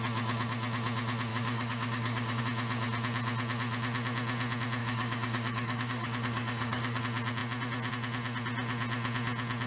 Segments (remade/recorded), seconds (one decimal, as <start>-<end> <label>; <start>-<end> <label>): 0.0-1.3 recorded; 1.3-2.4 remade; 2.4-4.8 recorded; 4.8-7.0 remade; 7.0-9.7 recorded